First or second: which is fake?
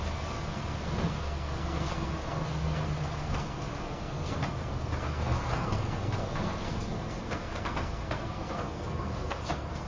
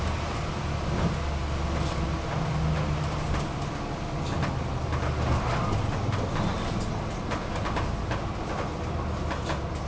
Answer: first